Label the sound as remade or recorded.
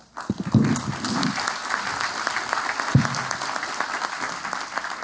recorded